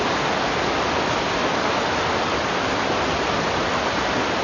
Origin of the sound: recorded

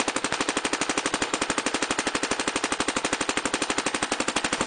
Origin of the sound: recorded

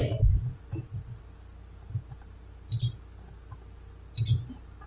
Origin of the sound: recorded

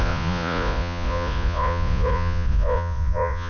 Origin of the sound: remade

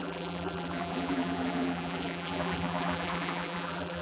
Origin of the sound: remade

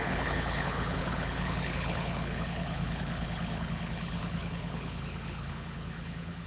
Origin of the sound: remade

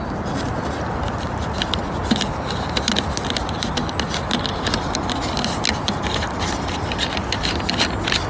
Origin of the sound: recorded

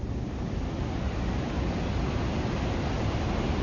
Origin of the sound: recorded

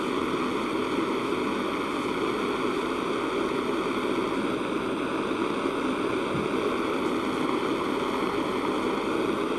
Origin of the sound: recorded